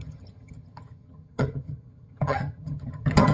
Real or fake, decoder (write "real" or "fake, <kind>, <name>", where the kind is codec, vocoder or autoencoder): fake, vocoder, HiFi-GAN